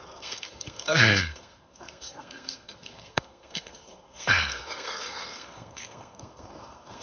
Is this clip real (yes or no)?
no